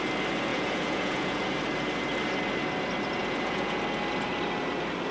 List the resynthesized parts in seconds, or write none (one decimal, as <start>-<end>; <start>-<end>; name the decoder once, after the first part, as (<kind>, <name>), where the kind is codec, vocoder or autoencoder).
0.5-1.4 (vocoder, Vocos); 3.2-3.8